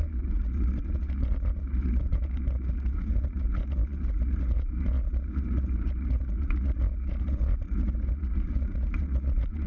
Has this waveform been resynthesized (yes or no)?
yes